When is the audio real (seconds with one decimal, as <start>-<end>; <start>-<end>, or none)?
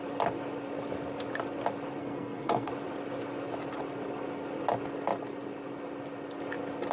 0.0-2.0; 2.7-6.9